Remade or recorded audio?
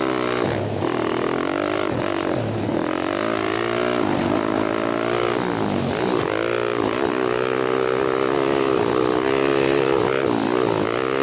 recorded